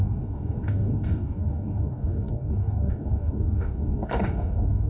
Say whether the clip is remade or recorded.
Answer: remade